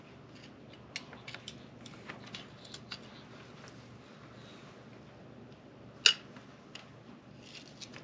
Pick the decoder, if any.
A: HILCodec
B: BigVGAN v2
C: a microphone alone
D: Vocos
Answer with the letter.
C